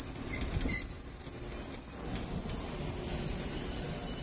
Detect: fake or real real